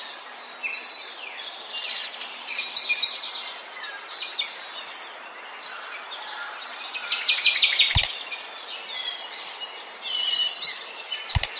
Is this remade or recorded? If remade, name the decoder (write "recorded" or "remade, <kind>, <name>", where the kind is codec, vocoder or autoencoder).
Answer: recorded